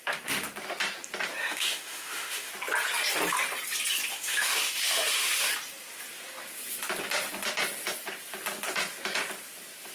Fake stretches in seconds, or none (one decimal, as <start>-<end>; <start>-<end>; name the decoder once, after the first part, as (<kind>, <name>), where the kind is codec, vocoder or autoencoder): 1.4-2.5 (autoencoder, DAC-VAE); 4.1-5.5